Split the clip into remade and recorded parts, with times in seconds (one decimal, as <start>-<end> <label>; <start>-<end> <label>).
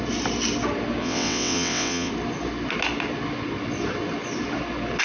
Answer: 0.0-1.0 recorded; 1.0-2.1 remade; 2.1-5.0 recorded